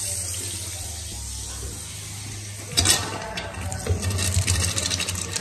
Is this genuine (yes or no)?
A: yes